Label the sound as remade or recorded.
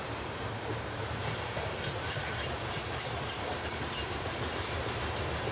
remade